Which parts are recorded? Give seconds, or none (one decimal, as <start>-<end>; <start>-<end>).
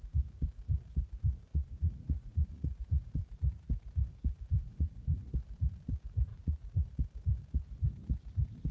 0.0-1.5; 3.1-4.6; 5.3-6.3; 6.9-8.7